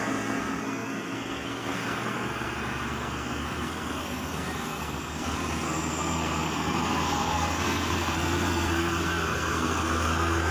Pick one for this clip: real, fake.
fake